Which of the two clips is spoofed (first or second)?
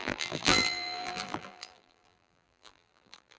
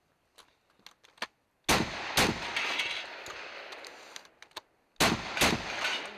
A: first